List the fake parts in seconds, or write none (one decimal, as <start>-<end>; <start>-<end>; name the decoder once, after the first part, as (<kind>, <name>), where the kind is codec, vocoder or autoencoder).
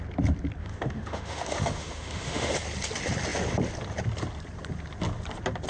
0.6-2.5 (autoencoder, DAC-VAE)